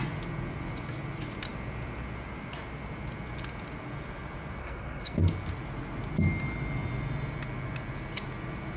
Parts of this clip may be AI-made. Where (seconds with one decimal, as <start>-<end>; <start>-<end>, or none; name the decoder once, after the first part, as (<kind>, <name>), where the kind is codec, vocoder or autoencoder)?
4.6-5.3 (codec, SNAC)